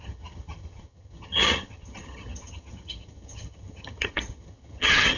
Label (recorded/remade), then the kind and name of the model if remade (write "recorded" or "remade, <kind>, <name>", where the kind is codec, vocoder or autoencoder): remade, vocoder, HiFi-GAN